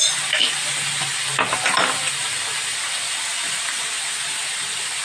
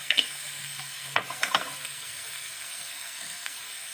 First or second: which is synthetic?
second